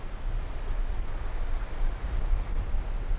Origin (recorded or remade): recorded